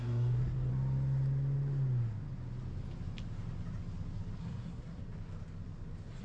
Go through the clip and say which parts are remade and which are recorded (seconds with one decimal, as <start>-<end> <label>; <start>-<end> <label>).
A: 0.0-0.7 remade; 0.7-4.4 recorded; 4.4-5.0 remade; 5.0-6.2 recorded